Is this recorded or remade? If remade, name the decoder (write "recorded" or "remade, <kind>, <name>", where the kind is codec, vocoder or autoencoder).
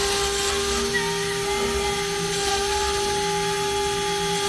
recorded